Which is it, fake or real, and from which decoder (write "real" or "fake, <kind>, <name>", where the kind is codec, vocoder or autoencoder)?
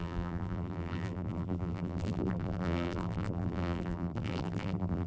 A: fake, vocoder, BigVGAN v2